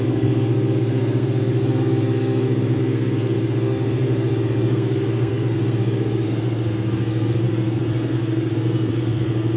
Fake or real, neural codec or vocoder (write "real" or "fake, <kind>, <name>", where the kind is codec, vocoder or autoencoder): fake, codec, SNAC